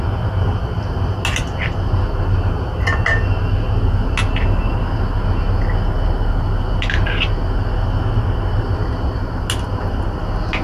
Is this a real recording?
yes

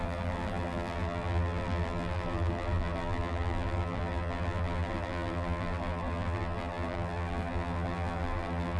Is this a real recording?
no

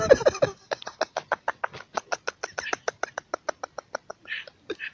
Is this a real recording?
yes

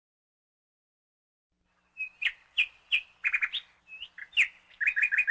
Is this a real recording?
yes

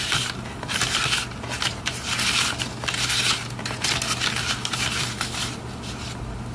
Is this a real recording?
yes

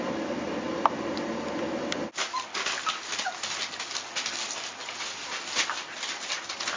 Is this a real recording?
yes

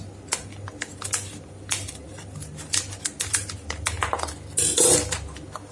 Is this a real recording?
yes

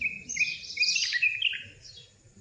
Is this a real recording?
yes